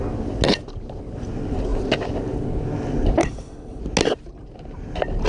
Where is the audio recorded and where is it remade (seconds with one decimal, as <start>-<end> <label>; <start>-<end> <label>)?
0.0-3.2 recorded; 3.2-3.8 remade; 3.8-5.3 recorded